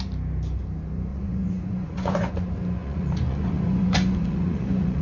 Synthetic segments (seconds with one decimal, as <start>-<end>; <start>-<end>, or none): 1.1-2.3; 2.8-5.0